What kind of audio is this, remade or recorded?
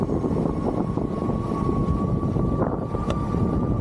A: recorded